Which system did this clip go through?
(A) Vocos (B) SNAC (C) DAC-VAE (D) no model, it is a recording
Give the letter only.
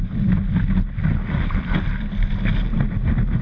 D